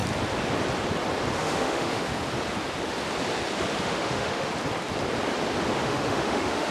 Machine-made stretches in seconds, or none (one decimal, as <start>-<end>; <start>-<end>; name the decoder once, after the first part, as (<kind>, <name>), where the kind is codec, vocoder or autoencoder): 1.4-2.1 (autoencoder, DAC-VAE); 3.8-4.5; 5.8-6.7

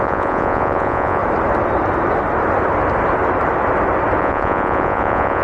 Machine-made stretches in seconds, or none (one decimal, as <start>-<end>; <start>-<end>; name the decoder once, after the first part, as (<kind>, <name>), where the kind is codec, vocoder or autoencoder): 0.0-1.2 (vocoder, Vocos); 4.2-5.4